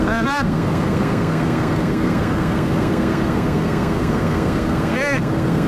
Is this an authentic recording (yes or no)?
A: no